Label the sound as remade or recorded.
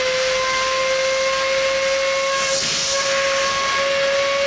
recorded